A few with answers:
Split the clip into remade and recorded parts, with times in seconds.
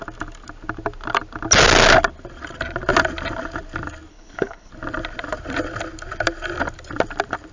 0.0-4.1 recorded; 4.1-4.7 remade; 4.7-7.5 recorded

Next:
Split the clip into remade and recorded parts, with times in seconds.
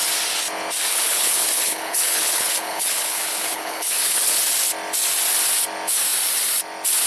0.0-0.9 recorded; 0.9-4.4 remade; 4.4-7.1 recorded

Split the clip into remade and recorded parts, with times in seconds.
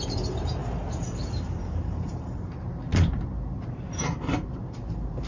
0.0-5.3 remade